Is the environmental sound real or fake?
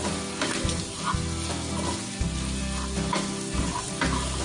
real